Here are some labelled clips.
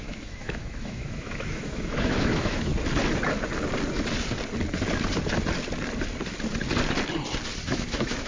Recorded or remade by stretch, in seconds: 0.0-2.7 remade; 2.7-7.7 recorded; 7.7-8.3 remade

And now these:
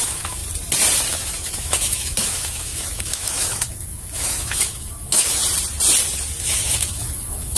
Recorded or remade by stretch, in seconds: 0.0-0.4 remade; 0.4-1.1 recorded; 1.1-5.4 remade; 5.4-6.4 recorded; 6.4-7.6 remade

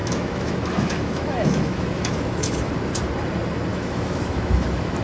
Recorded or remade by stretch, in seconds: 0.0-2.7 remade; 2.7-3.7 recorded; 3.7-5.0 remade

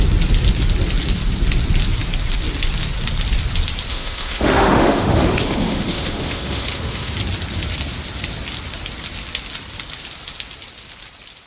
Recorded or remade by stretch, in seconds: 0.0-3.9 recorded; 3.9-7.1 remade; 7.1-11.5 recorded

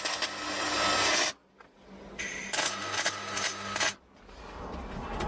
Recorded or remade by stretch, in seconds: 0.0-5.3 recorded

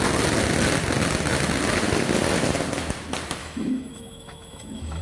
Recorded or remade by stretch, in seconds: 0.0-3.4 recorded; 3.4-5.0 remade

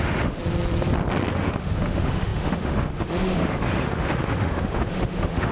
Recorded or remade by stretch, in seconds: 0.0-0.4 remade; 0.4-1.3 recorded; 1.3-5.5 remade